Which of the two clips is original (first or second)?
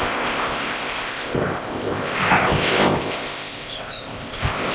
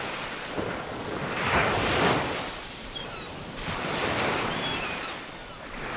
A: second